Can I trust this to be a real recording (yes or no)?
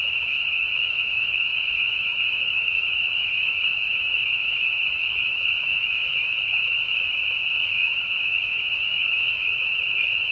no